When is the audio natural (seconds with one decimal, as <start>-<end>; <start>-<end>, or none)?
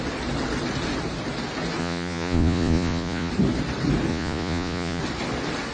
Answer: 0.0-1.8; 3.3-4.1; 5.0-5.7